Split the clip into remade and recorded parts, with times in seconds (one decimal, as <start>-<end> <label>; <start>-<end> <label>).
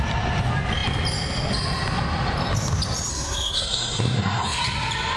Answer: 0.0-3.1 recorded; 3.1-4.6 remade; 4.6-5.2 recorded